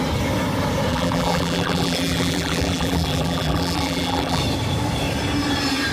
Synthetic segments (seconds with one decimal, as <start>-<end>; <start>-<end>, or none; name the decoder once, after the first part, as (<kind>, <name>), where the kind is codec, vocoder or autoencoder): 0.9-4.4 (vocoder, BigVGAN v2)